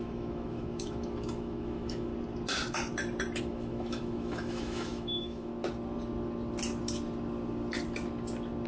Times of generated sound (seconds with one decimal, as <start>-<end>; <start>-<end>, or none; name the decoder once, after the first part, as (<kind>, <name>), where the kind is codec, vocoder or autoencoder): 0.0-2.1 (autoencoder, DAC-VAE); 3.4-5.5